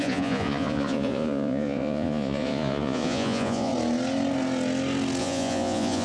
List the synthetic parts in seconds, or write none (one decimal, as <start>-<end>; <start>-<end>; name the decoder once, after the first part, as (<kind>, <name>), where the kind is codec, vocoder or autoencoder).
0.0-3.7 (vocoder, Vocos); 5.2-6.0